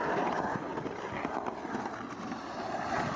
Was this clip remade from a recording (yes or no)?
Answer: no